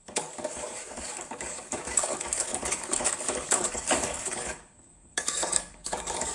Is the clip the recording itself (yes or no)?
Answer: no